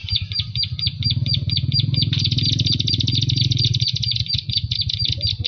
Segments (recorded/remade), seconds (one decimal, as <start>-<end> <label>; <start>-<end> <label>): 0.0-5.5 recorded